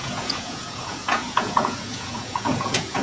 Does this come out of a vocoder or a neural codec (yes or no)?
yes